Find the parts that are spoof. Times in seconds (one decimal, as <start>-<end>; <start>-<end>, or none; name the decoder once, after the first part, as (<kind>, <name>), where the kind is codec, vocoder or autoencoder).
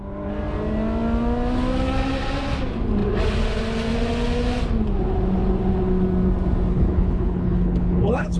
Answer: 6.7-8.4 (codec, HILCodec)